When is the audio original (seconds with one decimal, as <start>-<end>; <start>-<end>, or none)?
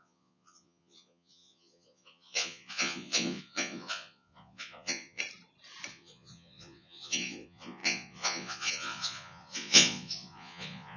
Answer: 5.2-5.9